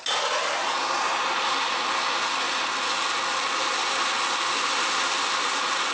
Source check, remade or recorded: recorded